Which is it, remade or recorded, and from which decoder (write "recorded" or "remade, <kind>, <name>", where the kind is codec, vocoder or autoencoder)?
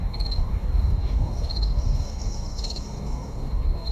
remade, codec, DAC